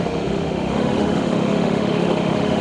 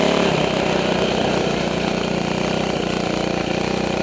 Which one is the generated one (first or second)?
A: first